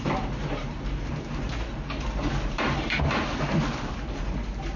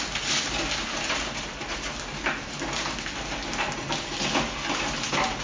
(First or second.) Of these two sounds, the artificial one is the first